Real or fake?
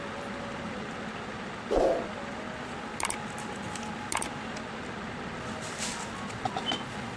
real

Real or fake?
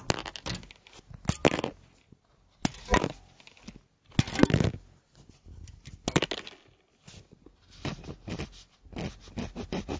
real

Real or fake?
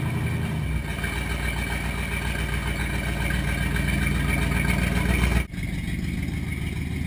real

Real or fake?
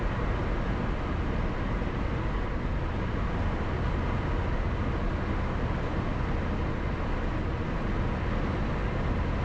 real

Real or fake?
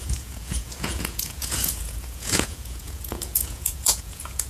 fake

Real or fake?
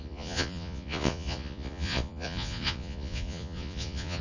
fake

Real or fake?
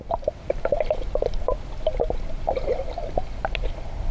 real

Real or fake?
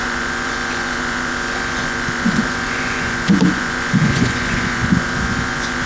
fake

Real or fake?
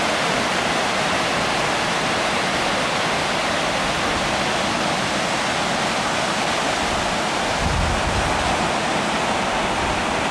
real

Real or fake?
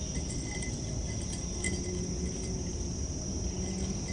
real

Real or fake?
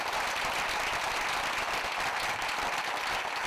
real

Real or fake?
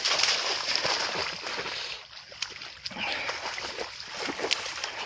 real